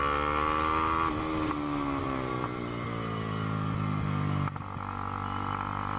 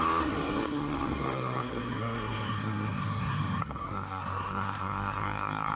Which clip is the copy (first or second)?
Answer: second